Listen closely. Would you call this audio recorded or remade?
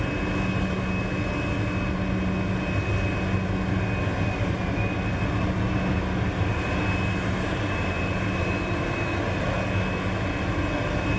recorded